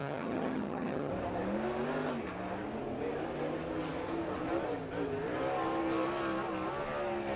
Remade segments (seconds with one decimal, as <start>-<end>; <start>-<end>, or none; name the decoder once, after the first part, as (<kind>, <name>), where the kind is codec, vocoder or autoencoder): 0.0-1.1 (vocoder, HiFi-GAN)